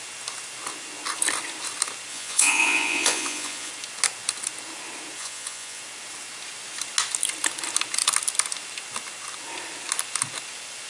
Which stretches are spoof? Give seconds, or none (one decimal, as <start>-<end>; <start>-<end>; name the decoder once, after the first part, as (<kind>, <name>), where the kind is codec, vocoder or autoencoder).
2.1-3.7 (vocoder, Vocos); 5.2-5.8